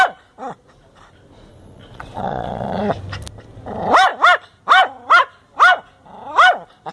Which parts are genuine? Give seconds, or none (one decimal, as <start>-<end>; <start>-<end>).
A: 0.0-1.5; 2.8-6.9